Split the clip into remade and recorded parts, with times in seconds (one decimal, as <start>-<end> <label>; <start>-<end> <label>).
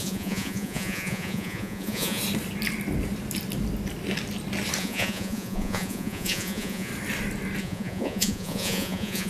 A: 0.0-2.2 remade; 2.2-4.8 recorded; 4.8-6.9 remade; 6.9-7.6 recorded; 7.6-9.3 remade